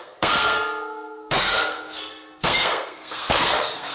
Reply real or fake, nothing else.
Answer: fake